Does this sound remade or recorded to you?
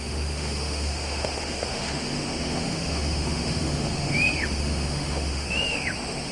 remade